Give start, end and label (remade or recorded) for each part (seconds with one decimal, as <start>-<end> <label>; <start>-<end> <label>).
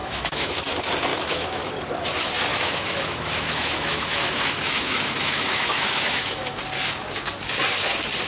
0.0-0.7 remade; 0.7-1.1 recorded; 1.1-1.7 remade; 1.7-2.5 recorded; 2.5-6.6 remade; 6.6-8.3 recorded